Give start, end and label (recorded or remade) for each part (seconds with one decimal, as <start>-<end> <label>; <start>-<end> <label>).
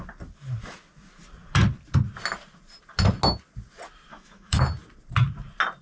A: 0.0-4.1 recorded; 4.1-4.6 remade; 4.6-5.8 recorded